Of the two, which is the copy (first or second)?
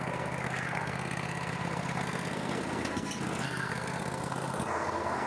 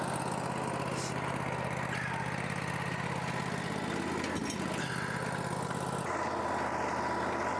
first